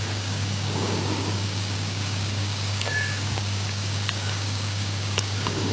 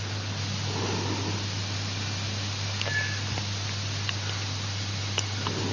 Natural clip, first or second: second